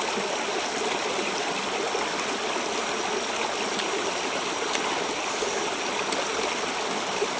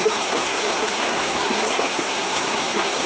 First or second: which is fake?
second